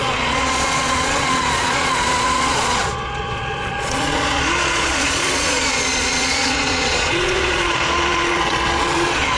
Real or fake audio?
fake